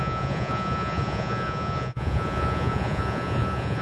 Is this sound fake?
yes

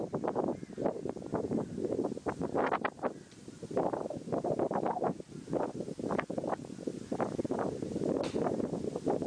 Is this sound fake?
no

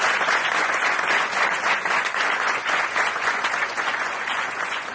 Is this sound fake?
yes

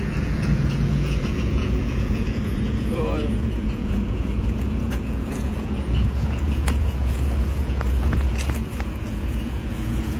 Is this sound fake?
yes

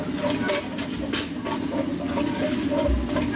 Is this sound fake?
no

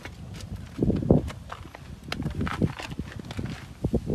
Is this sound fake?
no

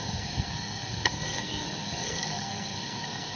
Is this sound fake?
yes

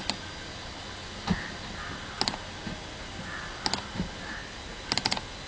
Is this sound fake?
no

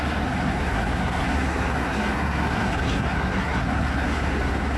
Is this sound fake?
yes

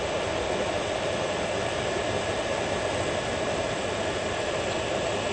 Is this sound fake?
no